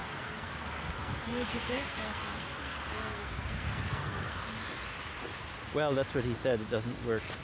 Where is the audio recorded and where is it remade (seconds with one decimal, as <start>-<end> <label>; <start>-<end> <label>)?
0.0-4.4 remade; 4.4-7.4 recorded